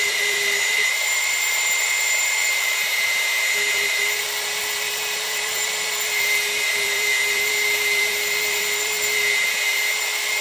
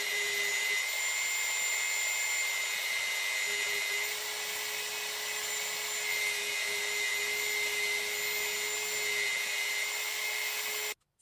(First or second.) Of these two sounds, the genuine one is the second